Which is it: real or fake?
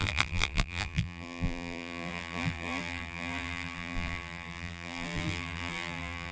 fake